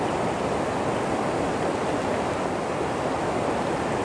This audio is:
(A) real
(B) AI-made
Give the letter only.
A